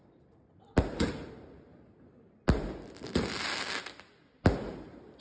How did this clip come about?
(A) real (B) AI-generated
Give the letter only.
A